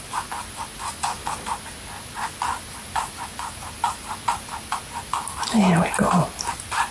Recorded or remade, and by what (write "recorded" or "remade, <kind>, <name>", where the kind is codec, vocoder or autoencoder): recorded